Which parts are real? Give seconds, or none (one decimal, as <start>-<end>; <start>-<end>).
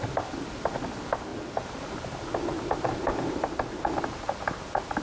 0.0-1.3; 4.3-5.0